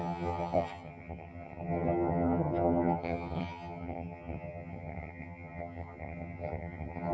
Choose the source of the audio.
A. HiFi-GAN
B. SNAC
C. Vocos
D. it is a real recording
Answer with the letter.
A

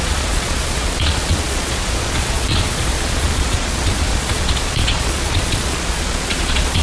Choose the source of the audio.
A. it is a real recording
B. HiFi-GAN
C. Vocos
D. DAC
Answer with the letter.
C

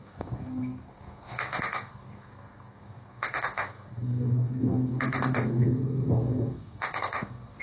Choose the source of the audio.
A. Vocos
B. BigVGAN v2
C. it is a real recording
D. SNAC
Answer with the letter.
D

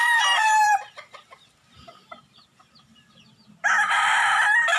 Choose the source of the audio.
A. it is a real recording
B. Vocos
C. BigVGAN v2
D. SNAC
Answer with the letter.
C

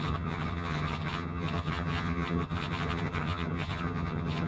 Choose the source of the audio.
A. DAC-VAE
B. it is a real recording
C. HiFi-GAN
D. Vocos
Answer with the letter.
C